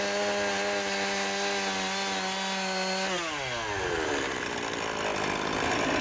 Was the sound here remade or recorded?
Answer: recorded